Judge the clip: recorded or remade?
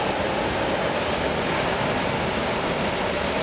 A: recorded